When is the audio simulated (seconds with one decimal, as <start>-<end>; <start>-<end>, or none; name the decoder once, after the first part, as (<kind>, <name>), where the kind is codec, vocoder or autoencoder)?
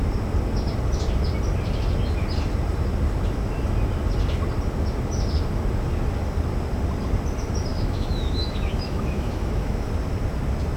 7.7-9.9 (autoencoder, DAC-VAE)